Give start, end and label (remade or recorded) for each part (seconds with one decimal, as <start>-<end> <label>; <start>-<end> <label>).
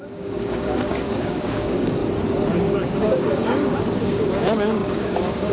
0.0-2.0 remade; 2.0-2.5 recorded; 2.5-5.5 remade